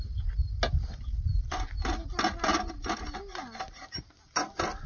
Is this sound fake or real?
real